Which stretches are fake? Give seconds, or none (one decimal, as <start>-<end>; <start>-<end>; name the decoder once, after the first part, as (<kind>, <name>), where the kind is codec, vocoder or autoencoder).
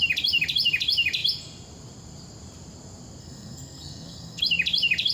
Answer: 3.2-4.4 (codec, SNAC)